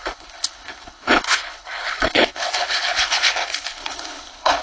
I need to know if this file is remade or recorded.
remade